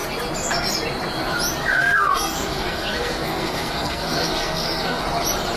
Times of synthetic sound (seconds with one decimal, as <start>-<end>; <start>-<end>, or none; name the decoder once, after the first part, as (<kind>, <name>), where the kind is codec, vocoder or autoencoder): 1.7-5.0 (codec, SNAC)